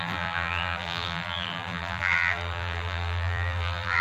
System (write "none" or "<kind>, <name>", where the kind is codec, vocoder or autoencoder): vocoder, BigVGAN v2